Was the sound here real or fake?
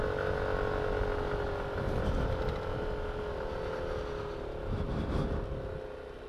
real